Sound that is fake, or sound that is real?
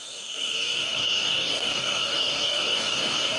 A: fake